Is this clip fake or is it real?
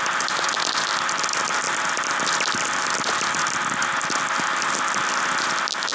real